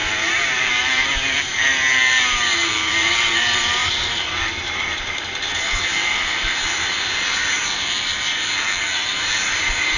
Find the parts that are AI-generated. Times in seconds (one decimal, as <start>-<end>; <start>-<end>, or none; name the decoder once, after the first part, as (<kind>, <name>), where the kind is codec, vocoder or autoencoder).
0.0-10.0 (vocoder, BigVGAN v2)